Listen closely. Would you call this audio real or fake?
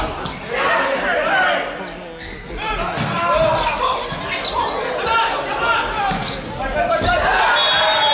real